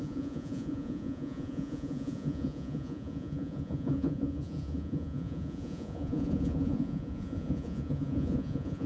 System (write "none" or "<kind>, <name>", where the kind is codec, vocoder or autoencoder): vocoder, Vocos